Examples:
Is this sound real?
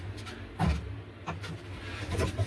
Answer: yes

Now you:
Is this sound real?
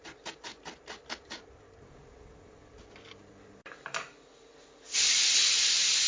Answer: yes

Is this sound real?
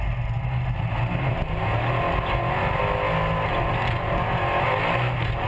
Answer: yes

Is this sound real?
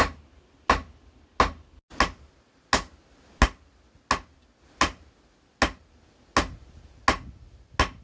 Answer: yes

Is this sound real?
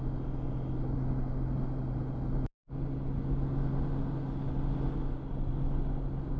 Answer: yes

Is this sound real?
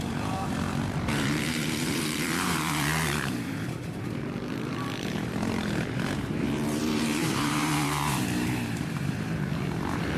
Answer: no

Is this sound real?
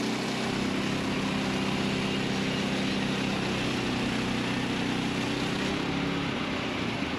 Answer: yes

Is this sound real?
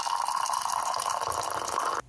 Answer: no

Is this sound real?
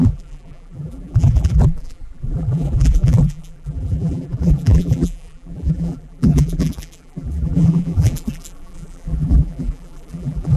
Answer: no